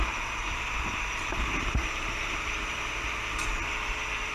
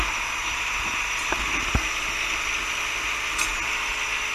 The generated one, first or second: first